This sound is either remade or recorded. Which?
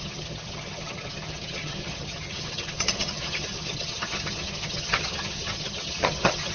remade